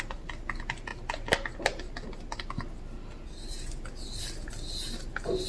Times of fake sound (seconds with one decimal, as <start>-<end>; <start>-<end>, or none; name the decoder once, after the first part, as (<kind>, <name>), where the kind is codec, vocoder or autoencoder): none